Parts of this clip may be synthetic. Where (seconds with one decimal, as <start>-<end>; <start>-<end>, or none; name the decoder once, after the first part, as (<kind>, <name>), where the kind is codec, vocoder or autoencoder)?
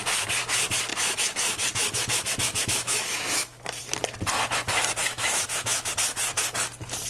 0.9-3.8 (autoencoder, DAC-VAE); 5.0-5.9